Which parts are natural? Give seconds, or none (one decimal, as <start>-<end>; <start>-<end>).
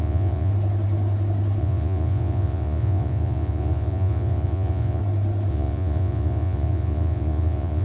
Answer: 0.5-1.6; 5.0-5.5